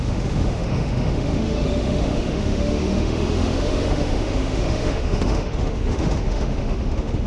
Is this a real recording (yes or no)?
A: no